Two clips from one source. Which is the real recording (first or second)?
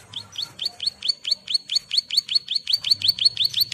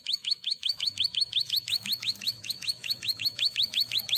first